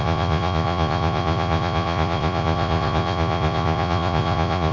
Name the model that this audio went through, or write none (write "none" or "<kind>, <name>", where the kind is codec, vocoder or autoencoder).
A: vocoder, Vocos